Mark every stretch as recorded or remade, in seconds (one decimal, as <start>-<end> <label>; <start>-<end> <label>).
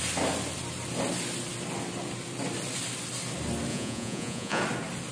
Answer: 0.0-3.7 recorded; 3.7-4.6 remade; 4.6-5.1 recorded